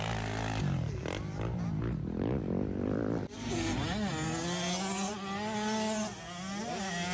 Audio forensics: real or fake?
real